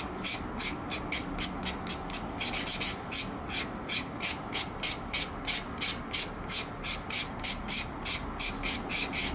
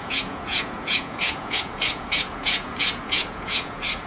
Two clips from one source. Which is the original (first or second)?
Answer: first